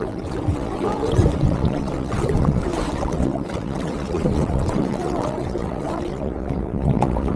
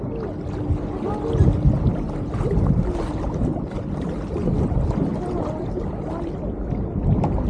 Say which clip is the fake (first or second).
first